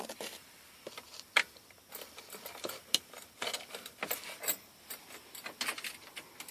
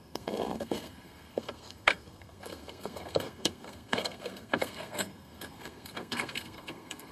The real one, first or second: first